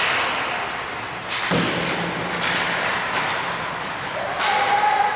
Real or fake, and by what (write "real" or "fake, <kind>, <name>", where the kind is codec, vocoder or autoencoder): real